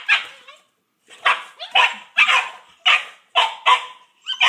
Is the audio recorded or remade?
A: recorded